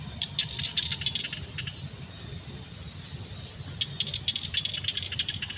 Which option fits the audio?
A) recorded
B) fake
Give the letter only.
A